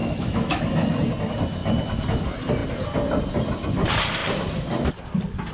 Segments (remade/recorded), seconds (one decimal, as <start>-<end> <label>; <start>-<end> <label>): 0.0-0.6 remade; 0.6-5.5 recorded